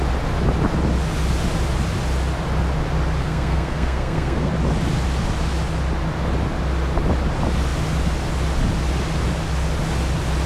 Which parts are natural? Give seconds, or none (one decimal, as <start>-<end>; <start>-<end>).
0.0-3.2; 4.5-10.5